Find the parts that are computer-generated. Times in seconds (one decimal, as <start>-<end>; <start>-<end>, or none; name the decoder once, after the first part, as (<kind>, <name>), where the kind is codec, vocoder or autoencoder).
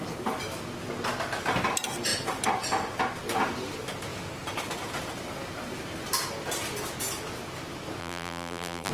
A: 8.0-8.9 (vocoder, BigVGAN v2)